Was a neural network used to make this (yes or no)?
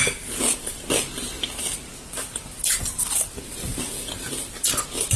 no